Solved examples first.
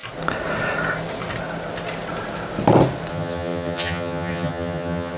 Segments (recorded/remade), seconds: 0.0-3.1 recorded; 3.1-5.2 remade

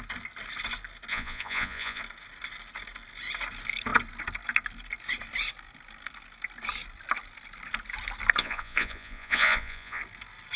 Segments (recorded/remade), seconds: 0.0-1.1 recorded; 1.1-2.0 remade; 2.0-8.4 recorded; 8.4-10.0 remade; 10.0-10.6 recorded